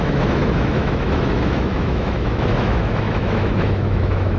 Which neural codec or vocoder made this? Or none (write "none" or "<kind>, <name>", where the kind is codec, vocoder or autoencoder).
autoencoder, DAC-VAE